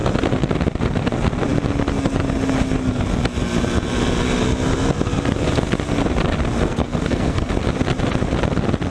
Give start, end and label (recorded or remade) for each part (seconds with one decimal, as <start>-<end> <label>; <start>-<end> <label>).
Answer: 0.0-6.6 recorded; 6.6-7.5 remade; 7.5-8.9 recorded